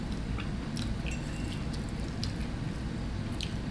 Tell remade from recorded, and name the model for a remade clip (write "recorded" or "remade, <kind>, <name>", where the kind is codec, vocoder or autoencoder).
recorded